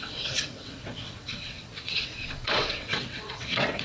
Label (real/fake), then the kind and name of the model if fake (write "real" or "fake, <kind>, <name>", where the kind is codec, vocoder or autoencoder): fake, vocoder, WaveNeXt